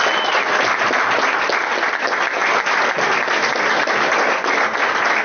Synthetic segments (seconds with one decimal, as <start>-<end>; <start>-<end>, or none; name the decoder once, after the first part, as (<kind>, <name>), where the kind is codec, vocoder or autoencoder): none